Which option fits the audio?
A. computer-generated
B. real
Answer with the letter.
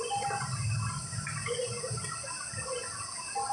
B